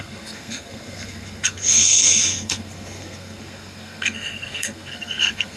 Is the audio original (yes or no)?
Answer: no